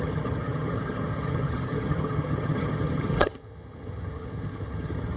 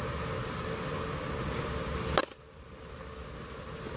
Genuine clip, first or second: second